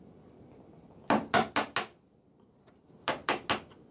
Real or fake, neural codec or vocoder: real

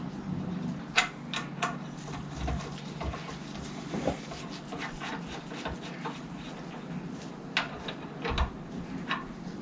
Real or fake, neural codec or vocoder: real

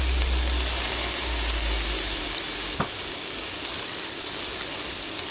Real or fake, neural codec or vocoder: real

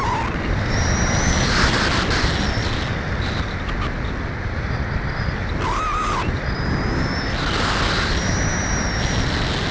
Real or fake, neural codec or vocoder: real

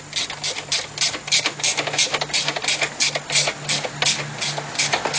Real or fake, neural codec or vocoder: real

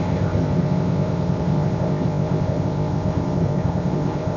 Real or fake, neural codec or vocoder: fake, codec, ZipCodec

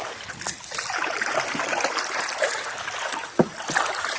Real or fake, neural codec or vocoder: real